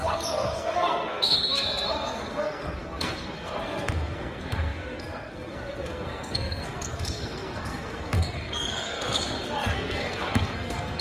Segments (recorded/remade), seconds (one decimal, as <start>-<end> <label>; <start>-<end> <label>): 0.0-11.0 remade

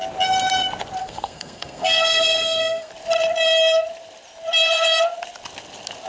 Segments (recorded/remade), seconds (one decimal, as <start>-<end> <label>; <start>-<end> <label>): 0.0-1.0 recorded; 1.0-2.9 remade; 2.9-6.1 recorded

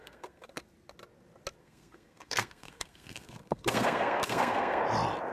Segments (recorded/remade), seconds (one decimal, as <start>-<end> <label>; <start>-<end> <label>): 0.0-0.6 remade; 0.6-1.6 recorded; 1.6-4.8 remade; 4.8-5.3 recorded